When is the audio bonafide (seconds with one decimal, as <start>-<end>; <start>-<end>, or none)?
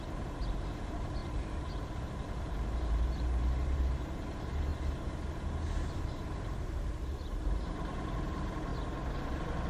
4.7-6.1; 8.7-9.7